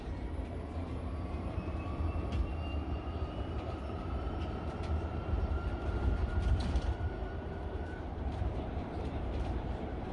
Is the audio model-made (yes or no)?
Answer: yes